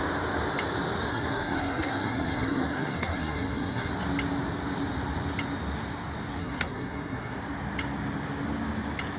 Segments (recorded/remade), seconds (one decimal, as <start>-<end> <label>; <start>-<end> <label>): 0.0-1.1 recorded; 1.1-3.9 remade; 3.9-6.4 recorded; 6.4-7.4 remade; 7.4-9.2 recorded